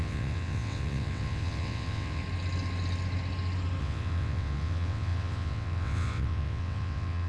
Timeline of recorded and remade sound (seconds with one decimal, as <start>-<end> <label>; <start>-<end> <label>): 0.0-2.2 remade; 2.2-3.8 recorded; 3.8-7.3 remade